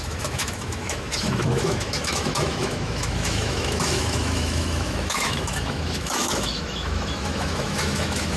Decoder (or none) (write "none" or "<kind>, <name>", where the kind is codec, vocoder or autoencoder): autoencoder, DAC-VAE